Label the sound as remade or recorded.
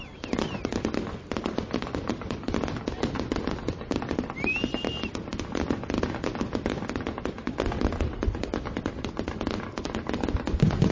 recorded